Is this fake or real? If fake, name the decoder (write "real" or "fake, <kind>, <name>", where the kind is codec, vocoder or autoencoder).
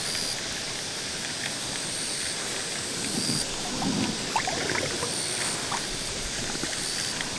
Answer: real